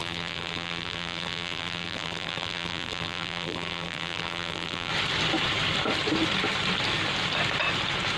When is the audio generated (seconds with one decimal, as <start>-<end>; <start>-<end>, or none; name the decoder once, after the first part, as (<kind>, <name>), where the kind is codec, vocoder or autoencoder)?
0.0-4.9 (vocoder, BigVGAN v2)